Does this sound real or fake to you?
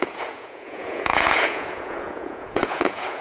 fake